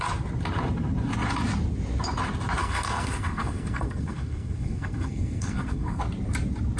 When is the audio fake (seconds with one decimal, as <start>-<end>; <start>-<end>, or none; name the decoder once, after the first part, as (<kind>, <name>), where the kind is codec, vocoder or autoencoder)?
2.6-6.0 (codec, SNAC)